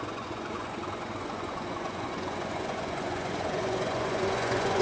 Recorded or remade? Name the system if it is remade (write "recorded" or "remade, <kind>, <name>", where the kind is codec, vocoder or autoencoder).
remade, vocoder, Vocos